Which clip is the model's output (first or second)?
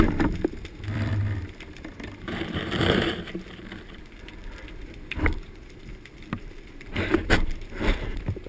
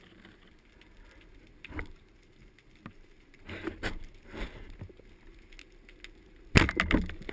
first